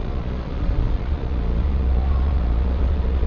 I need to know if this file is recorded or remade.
remade